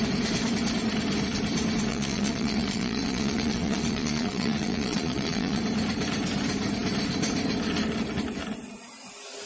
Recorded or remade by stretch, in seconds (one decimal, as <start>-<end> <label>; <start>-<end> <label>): 0.0-1.9 recorded; 1.9-5.6 remade; 5.6-9.4 recorded